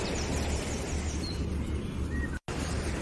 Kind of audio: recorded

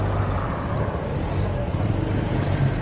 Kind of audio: recorded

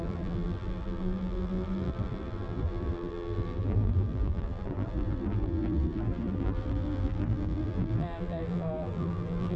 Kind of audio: remade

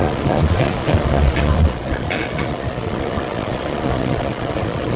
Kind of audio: remade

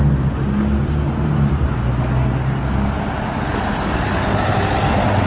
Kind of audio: recorded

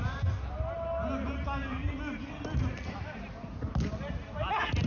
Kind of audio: recorded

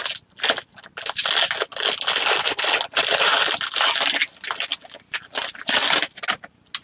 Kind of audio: recorded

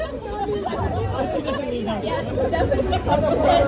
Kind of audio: recorded